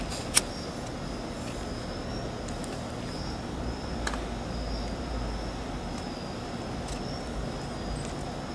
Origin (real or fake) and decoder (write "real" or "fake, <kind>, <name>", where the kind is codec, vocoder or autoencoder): real